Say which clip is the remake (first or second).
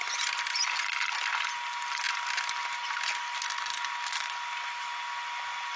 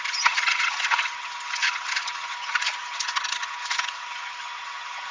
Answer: second